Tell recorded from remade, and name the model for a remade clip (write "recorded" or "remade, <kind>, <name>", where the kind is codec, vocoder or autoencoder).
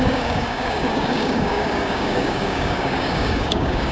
remade, codec, DAC